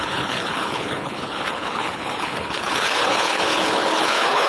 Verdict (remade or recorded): remade